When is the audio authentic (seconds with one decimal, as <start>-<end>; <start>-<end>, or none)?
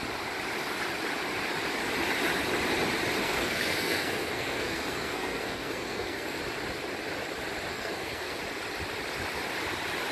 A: 0.0-3.2; 6.4-7.7; 8.4-10.1